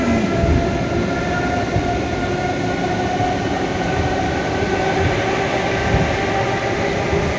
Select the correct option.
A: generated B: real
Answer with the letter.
B